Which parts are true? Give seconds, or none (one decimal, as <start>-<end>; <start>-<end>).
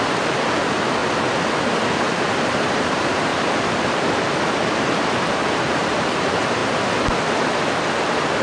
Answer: 1.0-2.0; 3.3-5.5; 6.6-8.0